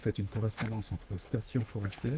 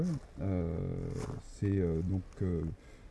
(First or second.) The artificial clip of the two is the first